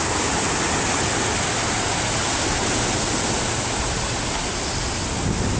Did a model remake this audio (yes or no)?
no